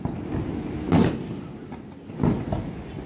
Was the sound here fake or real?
real